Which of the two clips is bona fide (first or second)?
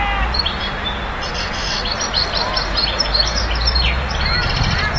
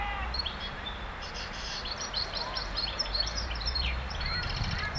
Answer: first